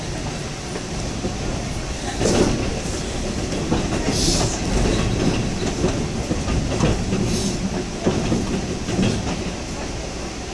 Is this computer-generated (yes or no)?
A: no